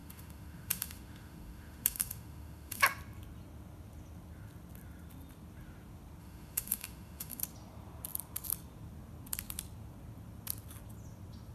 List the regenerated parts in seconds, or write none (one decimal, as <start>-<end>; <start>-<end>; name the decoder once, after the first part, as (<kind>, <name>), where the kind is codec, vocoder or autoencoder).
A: 0.0-2.8 (autoencoder, DAC-VAE); 6.2-7.4